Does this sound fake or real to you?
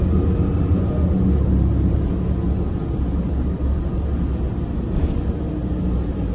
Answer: real